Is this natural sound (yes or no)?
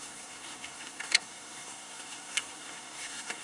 no